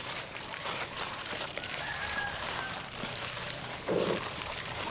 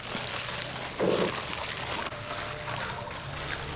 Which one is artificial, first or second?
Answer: first